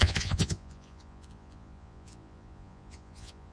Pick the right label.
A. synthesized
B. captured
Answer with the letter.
A